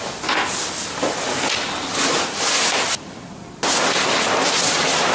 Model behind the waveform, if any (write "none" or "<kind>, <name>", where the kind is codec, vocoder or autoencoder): none